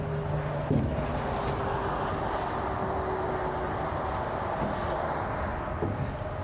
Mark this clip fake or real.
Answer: real